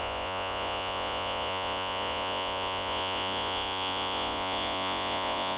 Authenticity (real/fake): fake